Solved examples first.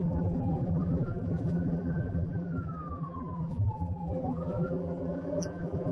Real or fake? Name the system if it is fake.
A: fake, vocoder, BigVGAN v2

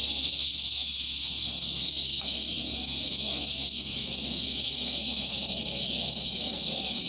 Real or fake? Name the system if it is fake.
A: fake, codec, SNAC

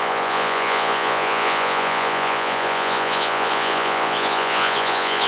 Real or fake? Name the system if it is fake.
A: fake, vocoder, Vocos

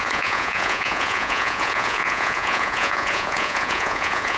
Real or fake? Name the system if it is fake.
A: fake, vocoder, Vocos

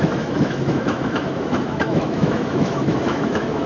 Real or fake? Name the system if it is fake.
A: fake, autoencoder, DAC-VAE